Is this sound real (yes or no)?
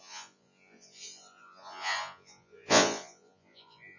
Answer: no